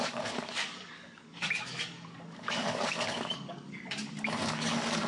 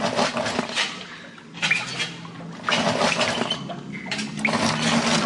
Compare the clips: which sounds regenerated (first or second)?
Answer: first